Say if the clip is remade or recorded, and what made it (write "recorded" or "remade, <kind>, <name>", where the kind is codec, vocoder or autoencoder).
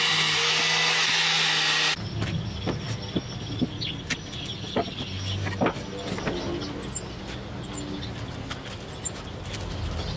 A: recorded